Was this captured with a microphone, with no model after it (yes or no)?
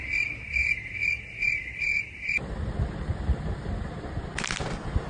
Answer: yes